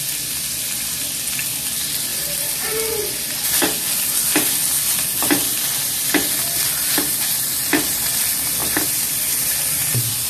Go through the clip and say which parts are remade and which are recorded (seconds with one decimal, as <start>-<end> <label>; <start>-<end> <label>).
0.0-2.1 recorded; 2.1-3.6 remade; 3.6-8.6 recorded; 8.6-10.3 remade